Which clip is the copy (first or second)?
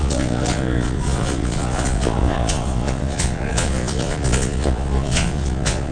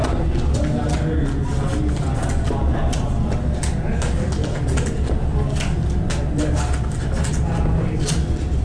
first